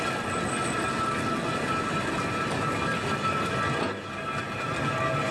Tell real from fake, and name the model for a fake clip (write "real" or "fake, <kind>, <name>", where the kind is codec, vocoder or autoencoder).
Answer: real